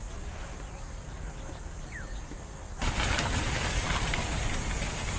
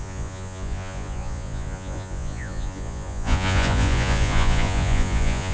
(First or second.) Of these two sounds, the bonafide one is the first